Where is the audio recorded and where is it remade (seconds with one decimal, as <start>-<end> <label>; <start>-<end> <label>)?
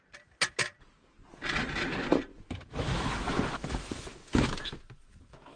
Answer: 0.0-2.3 recorded; 2.3-5.6 remade